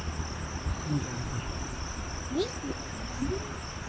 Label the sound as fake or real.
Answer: real